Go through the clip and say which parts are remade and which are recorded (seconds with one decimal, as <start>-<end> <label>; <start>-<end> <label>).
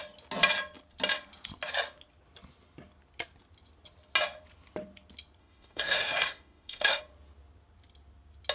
0.0-5.4 recorded; 5.4-7.0 remade; 7.0-8.5 recorded